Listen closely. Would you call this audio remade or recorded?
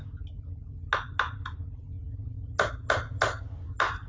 recorded